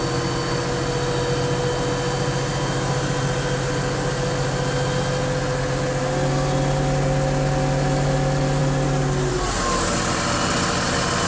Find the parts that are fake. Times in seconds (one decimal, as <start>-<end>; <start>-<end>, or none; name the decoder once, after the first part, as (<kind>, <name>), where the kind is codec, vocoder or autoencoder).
none

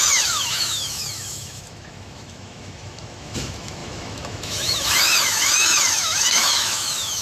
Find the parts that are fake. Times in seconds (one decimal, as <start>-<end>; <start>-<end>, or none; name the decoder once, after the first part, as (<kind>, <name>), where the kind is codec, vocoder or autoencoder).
0.0-7.2 (autoencoder, DAC-VAE)

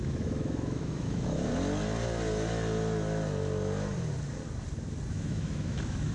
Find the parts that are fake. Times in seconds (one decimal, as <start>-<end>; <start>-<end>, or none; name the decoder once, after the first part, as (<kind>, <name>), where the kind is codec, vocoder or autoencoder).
0.0-1.5 (autoencoder, DAC-VAE); 5.1-6.1

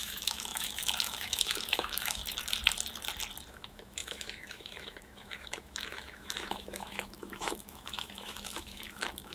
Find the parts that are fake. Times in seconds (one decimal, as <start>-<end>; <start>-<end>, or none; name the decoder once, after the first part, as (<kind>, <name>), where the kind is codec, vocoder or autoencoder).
0.0-2.2 (autoencoder, DAC-VAE); 3.5-9.3

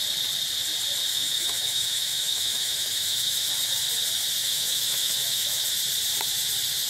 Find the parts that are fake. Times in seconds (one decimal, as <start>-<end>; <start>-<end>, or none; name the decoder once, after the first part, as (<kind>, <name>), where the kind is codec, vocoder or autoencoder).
1.1-3.5 (autoencoder, DAC-VAE); 4.4-5.7

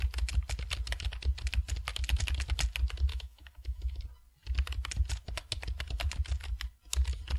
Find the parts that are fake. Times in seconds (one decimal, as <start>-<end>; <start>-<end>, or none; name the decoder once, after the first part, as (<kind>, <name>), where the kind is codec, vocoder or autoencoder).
3.1-4.0 (autoencoder, DAC-VAE)